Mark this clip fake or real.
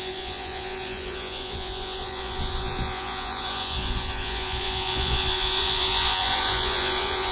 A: fake